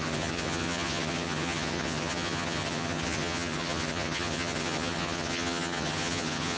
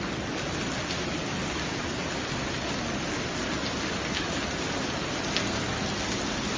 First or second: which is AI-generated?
first